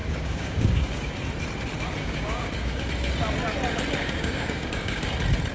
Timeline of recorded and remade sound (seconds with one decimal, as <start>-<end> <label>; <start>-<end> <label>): 0.0-1.1 remade; 1.1-2.0 recorded; 2.0-2.8 remade; 2.8-4.0 recorded; 4.0-5.1 remade; 5.1-5.5 recorded